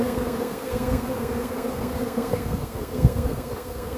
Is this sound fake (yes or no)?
yes